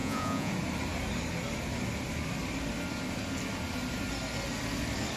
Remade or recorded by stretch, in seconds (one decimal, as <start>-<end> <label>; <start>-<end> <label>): 0.0-0.5 remade; 0.5-5.2 recorded